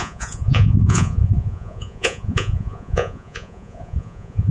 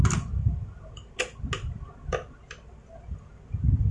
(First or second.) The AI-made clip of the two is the first